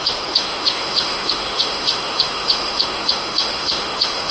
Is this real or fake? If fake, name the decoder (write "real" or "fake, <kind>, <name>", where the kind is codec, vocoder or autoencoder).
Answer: fake, autoencoder, DAC-VAE